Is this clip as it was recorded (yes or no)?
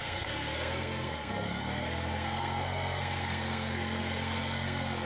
no